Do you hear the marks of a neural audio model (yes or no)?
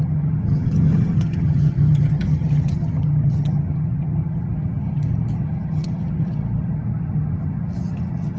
yes